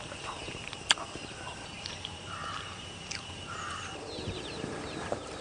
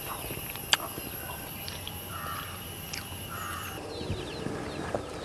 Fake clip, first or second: first